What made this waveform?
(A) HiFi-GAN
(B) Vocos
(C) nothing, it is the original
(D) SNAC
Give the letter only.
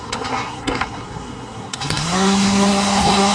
D